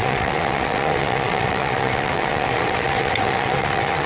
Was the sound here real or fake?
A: fake